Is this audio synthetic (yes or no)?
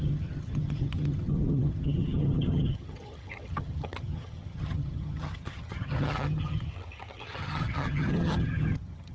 yes